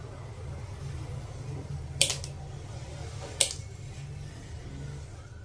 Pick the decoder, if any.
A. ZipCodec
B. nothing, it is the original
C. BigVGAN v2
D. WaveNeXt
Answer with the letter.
B